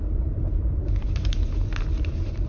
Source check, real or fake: fake